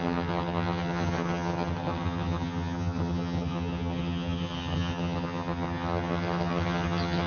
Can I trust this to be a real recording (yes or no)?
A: no